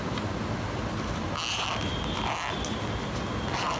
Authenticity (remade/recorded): recorded